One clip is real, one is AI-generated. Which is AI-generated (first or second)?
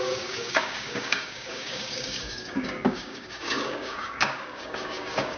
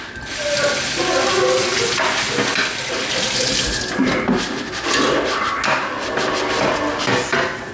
first